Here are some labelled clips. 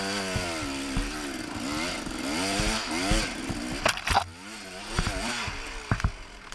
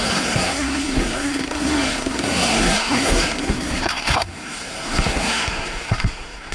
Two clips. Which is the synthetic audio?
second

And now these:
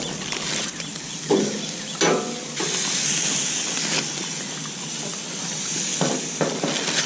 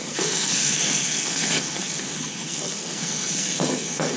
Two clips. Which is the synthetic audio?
second